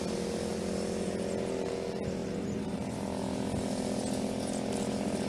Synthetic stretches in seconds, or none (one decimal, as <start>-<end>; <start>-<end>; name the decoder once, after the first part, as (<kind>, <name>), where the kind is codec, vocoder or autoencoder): 2.2-3.0 (vocoder, BigVGAN v2)